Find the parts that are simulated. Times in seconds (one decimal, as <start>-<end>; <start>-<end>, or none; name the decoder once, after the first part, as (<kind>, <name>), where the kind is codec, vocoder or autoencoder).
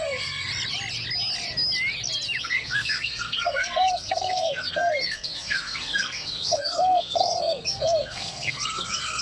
0.0-0.5 (codec, SNAC); 2.4-9.2